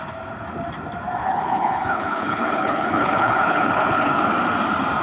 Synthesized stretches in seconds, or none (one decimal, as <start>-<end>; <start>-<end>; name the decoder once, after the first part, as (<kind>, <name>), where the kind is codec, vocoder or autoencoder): 1.2-4.2 (codec, HILCodec)